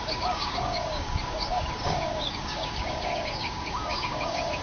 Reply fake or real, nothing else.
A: fake